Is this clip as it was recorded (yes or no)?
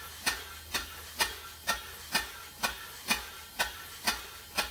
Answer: yes